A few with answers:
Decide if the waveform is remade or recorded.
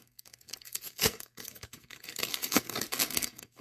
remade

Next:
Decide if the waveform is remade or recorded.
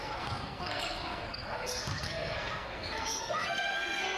remade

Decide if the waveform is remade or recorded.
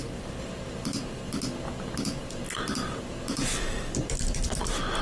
recorded